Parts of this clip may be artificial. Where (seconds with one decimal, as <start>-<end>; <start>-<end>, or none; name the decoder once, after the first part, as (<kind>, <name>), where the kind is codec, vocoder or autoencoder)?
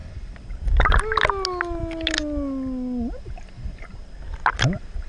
none